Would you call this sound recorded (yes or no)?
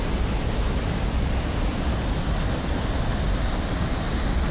yes